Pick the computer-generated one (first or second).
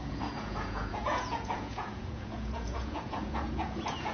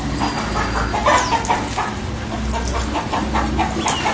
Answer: first